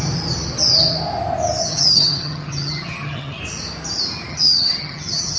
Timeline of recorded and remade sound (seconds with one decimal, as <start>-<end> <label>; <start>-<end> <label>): 0.0-1.6 recorded; 1.6-3.4 remade; 3.4-4.3 recorded; 4.3-5.4 remade

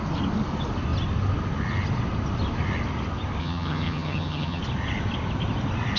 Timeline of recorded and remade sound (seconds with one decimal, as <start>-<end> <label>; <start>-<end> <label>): 0.0-3.4 recorded; 3.4-4.6 remade; 4.6-6.0 recorded

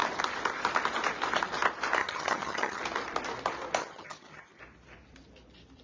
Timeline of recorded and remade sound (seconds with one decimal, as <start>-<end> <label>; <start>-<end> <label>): 0.0-2.0 recorded; 2.0-2.8 remade; 2.8-3.8 recorded; 3.8-4.6 remade; 4.6-5.8 recorded

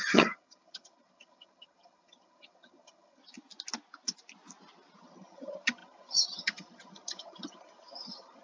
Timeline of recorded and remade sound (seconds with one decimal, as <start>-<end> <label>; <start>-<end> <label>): 0.0-3.2 remade; 3.2-5.0 recorded; 5.0-8.4 remade

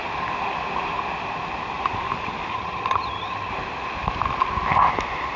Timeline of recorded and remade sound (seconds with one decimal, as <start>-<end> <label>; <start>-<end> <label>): 0.0-2.5 recorded; 2.5-3.5 remade; 3.5-5.4 recorded

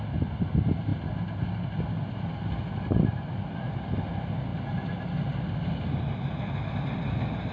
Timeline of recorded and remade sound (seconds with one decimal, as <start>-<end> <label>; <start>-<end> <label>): 0.0-7.5 recorded

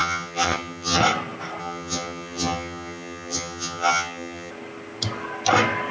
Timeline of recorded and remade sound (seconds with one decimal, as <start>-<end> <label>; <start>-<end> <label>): 0.0-1.0 remade; 1.0-1.6 recorded; 1.6-4.5 remade; 4.5-5.9 recorded

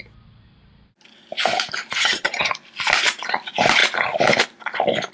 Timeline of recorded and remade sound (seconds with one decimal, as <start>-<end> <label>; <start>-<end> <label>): 0.0-2.0 recorded; 2.0-2.5 remade; 2.5-5.1 recorded